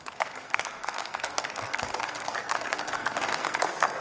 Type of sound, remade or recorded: remade